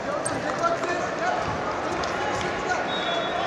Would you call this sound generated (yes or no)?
no